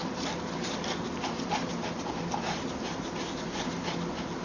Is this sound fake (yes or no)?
no